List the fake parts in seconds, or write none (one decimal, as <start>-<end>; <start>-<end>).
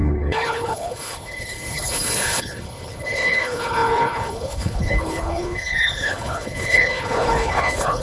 0.0-8.0